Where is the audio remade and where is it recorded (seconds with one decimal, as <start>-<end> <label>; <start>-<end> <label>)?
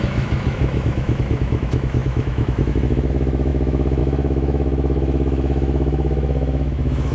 0.0-7.1 remade